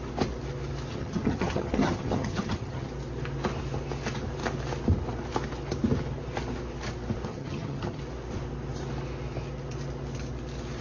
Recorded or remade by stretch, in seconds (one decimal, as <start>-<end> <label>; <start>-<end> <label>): 0.0-0.9 recorded; 0.9-2.9 remade; 2.9-7.3 recorded; 7.3-8.0 remade; 8.0-10.8 recorded